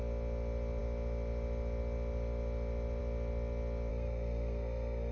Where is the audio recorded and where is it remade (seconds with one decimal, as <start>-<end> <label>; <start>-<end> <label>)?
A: 0.0-3.9 recorded; 3.9-5.1 remade